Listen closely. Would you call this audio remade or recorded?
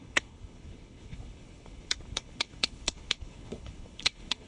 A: remade